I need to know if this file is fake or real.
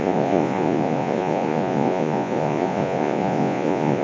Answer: fake